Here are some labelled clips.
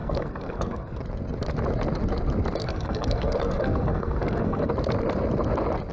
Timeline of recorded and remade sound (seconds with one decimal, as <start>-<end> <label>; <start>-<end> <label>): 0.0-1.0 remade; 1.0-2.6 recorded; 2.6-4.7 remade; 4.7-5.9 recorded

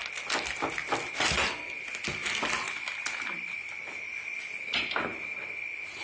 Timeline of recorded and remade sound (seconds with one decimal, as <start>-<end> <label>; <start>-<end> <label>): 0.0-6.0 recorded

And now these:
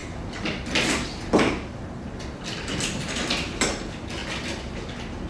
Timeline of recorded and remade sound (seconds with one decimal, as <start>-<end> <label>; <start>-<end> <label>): 0.0-5.3 recorded

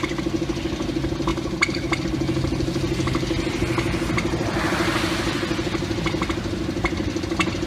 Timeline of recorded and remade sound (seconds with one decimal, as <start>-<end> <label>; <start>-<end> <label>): 0.0-7.7 recorded

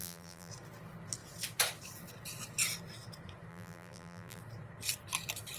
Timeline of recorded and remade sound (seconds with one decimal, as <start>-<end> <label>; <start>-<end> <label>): 0.0-0.5 remade; 0.5-3.5 recorded; 3.5-4.4 remade; 4.4-5.6 recorded

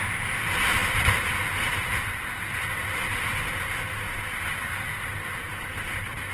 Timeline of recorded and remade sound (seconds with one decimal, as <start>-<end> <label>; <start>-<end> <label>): 0.0-6.3 recorded

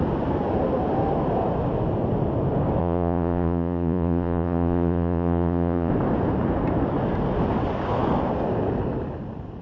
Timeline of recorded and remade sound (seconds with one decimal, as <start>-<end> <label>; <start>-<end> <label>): 0.0-2.8 recorded; 2.8-5.9 remade; 5.9-9.6 recorded

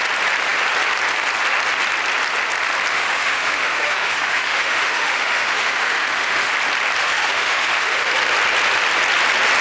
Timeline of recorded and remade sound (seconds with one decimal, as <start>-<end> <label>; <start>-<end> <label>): 0.0-2.9 recorded; 2.9-6.5 remade; 6.5-7.0 recorded; 7.0-8.1 remade; 8.1-9.6 recorded